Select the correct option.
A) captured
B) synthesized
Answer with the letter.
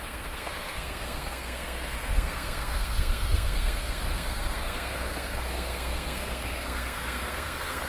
B